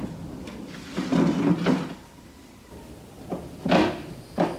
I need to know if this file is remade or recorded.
recorded